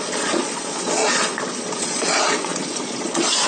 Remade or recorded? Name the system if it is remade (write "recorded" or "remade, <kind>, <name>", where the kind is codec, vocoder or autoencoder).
remade, vocoder, Vocos